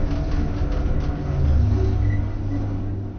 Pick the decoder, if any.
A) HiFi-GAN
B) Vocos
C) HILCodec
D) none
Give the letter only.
D